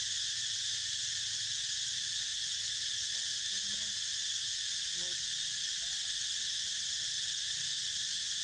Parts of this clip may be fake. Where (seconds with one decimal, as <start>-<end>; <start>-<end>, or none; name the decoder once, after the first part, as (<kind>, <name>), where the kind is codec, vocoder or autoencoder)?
none